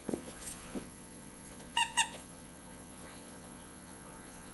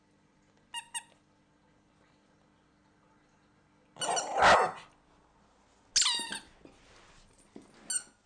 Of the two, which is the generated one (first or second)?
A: first